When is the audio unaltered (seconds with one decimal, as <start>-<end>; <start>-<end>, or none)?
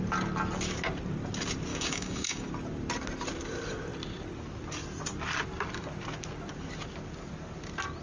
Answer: 0.0-1.7; 2.5-8.0